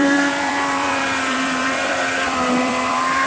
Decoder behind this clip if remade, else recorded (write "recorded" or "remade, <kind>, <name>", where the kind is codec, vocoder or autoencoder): remade, vocoder, BigVGAN v2